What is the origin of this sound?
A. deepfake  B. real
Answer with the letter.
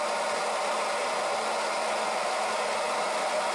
B